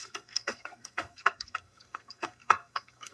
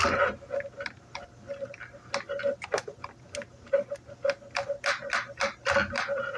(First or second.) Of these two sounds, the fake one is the first